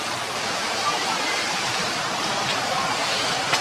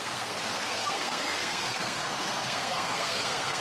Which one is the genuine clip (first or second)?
first